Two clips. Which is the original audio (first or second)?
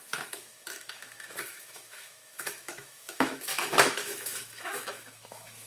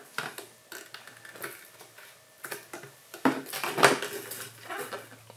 second